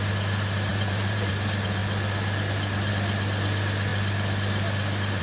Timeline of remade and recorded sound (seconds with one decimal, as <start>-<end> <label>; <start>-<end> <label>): 0.0-0.7 recorded; 0.7-1.3 remade; 1.3-5.2 recorded